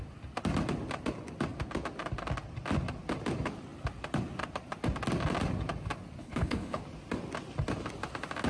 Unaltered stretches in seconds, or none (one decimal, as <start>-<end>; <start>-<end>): 0.0-6.2; 6.8-8.5

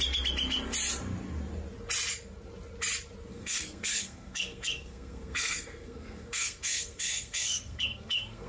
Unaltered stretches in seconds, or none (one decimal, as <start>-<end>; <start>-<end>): 0.0-3.3